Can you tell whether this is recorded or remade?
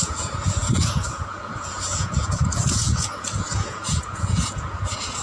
remade